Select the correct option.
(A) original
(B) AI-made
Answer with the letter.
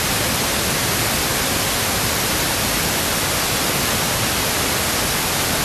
A